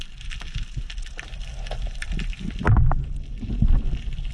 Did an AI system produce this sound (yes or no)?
no